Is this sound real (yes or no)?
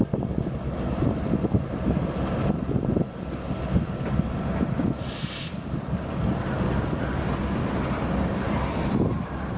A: yes